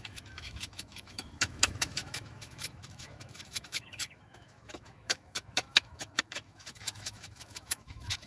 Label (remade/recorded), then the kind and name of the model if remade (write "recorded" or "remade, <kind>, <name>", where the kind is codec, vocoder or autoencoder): remade, autoencoder, DAC-VAE